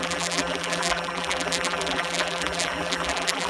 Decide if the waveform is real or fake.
fake